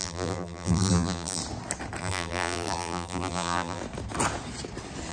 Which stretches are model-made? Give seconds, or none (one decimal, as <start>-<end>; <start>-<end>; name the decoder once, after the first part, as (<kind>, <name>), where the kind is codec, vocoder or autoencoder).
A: 0.0-1.4 (vocoder, BigVGAN v2); 2.0-3.8

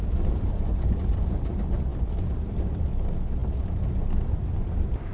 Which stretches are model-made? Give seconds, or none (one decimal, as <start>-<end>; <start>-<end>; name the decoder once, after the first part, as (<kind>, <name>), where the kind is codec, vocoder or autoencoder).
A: none

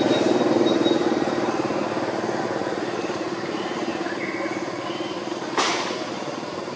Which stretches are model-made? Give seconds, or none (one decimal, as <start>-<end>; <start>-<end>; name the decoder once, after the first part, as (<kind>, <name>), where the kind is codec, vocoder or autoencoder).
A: 0.0-1.7 (vocoder, BigVGAN v2); 2.8-3.9; 5.3-6.8

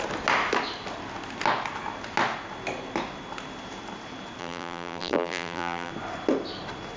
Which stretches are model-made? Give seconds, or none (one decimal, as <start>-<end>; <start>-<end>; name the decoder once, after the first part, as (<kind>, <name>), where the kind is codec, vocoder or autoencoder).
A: 4.4-5.9 (vocoder, BigVGAN v2)

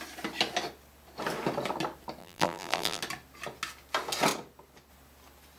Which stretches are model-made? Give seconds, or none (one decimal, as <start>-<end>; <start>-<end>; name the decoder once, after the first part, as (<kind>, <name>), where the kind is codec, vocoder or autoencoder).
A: 2.2-3.0 (vocoder, BigVGAN v2)

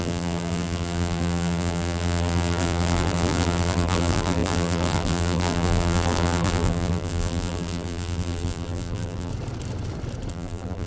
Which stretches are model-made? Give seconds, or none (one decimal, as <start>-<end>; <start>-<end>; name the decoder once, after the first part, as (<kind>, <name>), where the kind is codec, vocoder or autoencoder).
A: 0.0-9.3 (vocoder, BigVGAN v2); 10.3-10.9

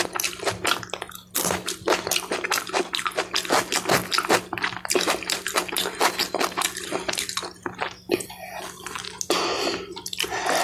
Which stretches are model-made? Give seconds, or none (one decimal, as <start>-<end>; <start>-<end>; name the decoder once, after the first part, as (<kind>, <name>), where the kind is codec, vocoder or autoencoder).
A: none